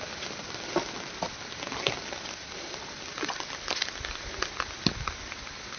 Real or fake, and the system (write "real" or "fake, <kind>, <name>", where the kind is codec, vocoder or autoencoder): real